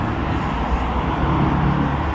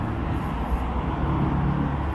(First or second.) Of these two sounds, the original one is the second